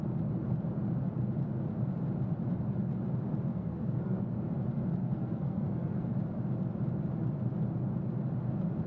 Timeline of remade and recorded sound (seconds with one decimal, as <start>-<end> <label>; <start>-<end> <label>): 0.0-3.5 recorded; 3.5-4.2 remade; 4.2-5.0 recorded; 5.0-6.1 remade; 6.1-8.9 recorded